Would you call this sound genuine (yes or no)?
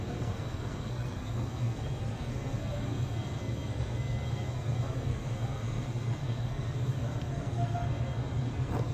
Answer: no